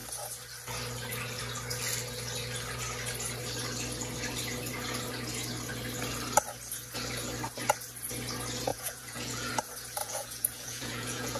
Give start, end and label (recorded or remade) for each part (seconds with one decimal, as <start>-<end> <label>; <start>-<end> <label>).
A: 0.0-8.7 recorded; 8.7-9.5 remade; 9.5-10.0 recorded; 10.0-11.4 remade